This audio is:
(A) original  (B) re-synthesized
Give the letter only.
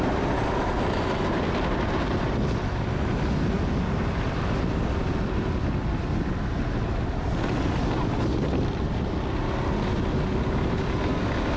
A